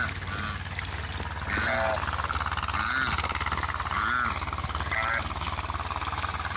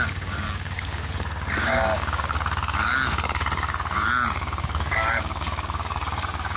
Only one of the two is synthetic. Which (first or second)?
second